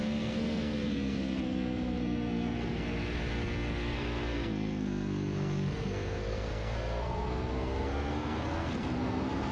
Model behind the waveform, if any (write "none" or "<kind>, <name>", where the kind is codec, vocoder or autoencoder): codec, SNAC